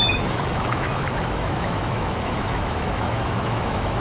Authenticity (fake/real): fake